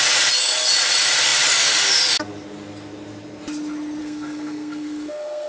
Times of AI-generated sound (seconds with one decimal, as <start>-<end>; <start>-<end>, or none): 4.0-5.5